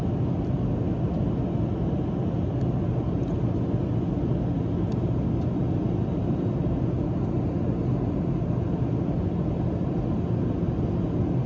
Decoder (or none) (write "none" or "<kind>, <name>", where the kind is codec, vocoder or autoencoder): none